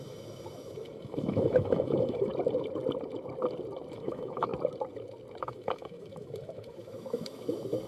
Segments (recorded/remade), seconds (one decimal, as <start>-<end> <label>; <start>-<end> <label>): 0.0-2.3 remade; 2.3-3.9 recorded; 3.9-4.5 remade; 4.5-5.4 recorded; 5.4-7.9 remade